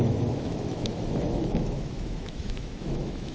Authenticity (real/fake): fake